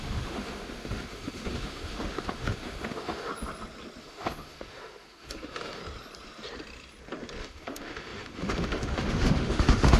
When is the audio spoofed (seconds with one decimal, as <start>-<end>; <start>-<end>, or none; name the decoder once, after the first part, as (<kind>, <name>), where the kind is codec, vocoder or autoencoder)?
0.0-3.3 (autoencoder, DAC-VAE); 4.0-5.8; 7.4-10.0